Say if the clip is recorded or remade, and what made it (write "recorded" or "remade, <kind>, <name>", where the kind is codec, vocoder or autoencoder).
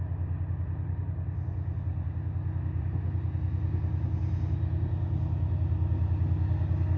recorded